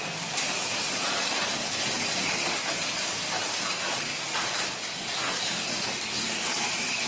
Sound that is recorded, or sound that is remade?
recorded